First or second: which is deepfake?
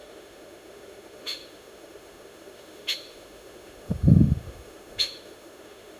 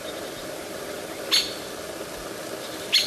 first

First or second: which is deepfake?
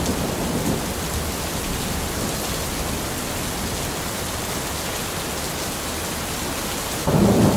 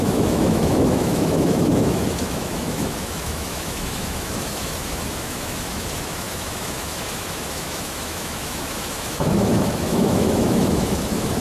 second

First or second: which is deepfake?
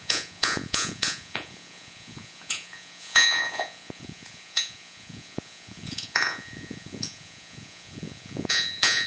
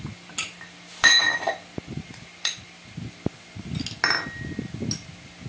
first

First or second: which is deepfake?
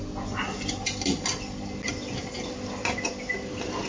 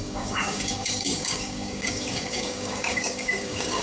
second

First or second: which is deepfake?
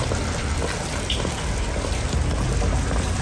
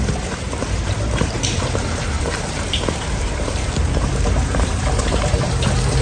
second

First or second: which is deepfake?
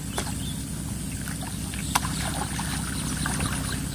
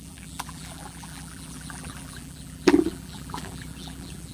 second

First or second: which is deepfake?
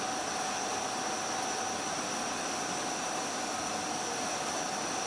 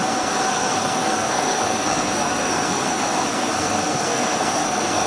second